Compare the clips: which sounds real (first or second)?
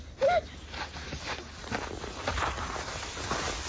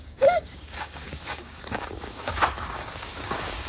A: first